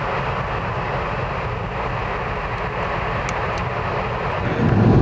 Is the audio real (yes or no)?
yes